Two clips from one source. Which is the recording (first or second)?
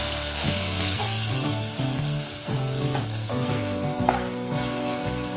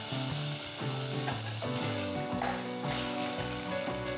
second